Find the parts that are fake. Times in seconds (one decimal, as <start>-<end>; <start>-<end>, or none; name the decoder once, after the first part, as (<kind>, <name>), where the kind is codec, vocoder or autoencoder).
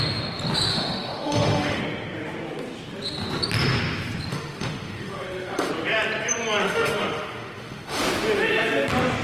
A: 0.7-1.8 (autoencoder, DAC-VAE); 4.3-5.7; 6.6-8.0